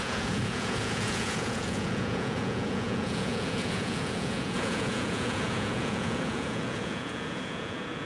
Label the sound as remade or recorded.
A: remade